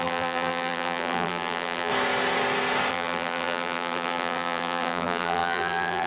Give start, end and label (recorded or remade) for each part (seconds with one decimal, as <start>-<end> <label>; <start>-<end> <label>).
0.0-1.9 remade; 1.9-2.9 recorded; 2.9-6.1 remade